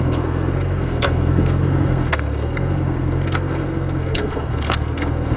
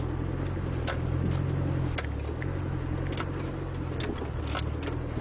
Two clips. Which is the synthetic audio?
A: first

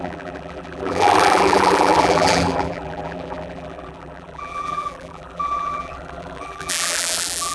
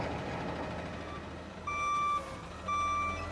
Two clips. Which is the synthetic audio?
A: first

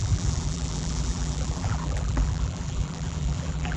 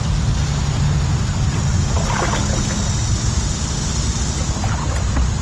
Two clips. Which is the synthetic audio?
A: first